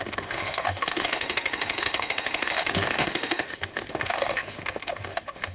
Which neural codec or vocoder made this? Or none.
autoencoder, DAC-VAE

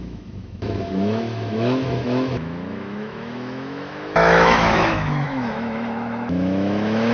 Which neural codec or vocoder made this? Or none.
autoencoder, DAC-VAE